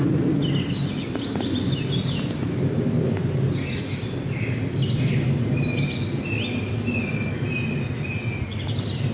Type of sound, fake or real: real